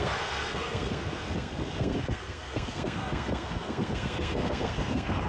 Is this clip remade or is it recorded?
remade